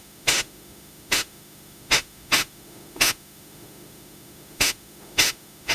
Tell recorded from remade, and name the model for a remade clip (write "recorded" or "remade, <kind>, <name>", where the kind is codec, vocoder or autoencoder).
remade, autoencoder, DAC-VAE